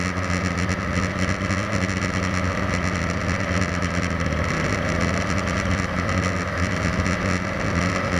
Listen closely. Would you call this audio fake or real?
real